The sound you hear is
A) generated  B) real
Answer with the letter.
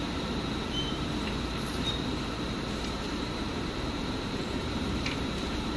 A